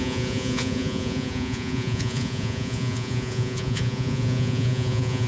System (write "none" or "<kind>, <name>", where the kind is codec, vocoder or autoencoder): vocoder, Vocos